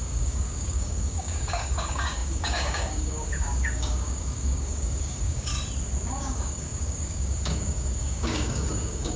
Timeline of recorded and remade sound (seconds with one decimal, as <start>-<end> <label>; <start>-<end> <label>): 0.0-5.5 remade; 5.5-6.1 recorded; 6.1-9.2 remade